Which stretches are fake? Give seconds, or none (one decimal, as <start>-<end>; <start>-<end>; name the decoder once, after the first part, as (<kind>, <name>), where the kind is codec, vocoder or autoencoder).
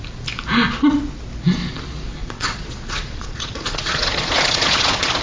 2.2-5.2 (vocoder, Vocos)